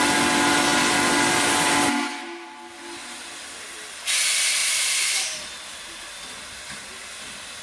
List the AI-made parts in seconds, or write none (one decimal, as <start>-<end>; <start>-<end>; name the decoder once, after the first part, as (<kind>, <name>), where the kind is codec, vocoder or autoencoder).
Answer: 4.6-7.0 (vocoder, BigVGAN v2)

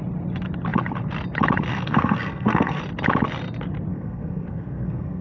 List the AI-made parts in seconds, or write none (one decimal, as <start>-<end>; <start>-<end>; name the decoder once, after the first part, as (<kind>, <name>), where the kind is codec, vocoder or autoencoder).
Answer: 1.7-2.8 (codec, SNAC); 3.9-5.2

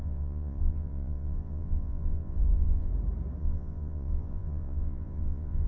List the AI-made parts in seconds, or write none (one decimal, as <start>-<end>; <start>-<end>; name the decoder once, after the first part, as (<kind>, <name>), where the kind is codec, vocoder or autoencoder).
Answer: 0.0-2.9 (vocoder, Vocos); 3.4-5.7

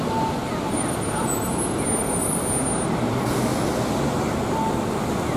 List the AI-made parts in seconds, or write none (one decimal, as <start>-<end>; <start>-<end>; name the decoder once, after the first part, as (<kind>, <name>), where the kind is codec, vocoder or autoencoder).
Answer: none

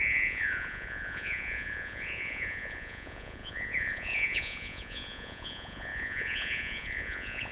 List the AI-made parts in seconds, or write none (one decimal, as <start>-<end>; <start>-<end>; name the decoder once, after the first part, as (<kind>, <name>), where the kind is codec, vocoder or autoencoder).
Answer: 0.0-7.5 (vocoder, Vocos)

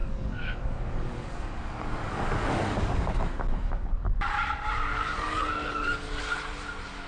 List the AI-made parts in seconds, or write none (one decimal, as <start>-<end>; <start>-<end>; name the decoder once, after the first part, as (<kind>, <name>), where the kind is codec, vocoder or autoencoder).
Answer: 0.0-4.1 (codec, DAC); 4.9-6.2

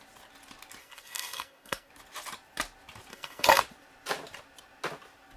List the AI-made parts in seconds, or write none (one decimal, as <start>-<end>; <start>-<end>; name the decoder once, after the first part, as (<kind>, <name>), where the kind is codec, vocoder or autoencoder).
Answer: 0.8-1.9 (codec, SNAC); 3.1-3.6

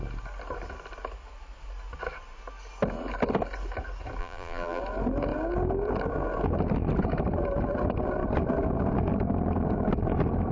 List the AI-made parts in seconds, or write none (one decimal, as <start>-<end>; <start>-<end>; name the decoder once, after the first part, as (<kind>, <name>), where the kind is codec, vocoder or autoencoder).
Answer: 4.2-4.8 (vocoder, BigVGAN v2)